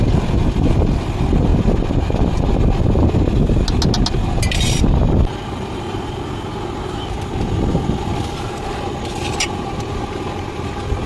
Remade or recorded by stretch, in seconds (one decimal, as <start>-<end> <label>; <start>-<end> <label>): 0.0-11.1 recorded